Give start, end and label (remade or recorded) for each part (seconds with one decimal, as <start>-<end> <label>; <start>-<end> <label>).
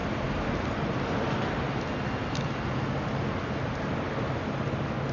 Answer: 0.0-5.1 recorded